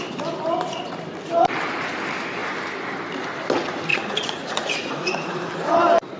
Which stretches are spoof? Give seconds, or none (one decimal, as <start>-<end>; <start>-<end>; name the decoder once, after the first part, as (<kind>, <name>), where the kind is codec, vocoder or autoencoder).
3.9-5.5 (vocoder, Vocos)